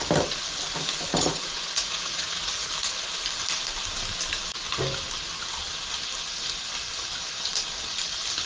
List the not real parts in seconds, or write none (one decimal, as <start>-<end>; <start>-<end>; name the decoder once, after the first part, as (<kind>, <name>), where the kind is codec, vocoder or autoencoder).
1.1-2.7 (vocoder, Vocos)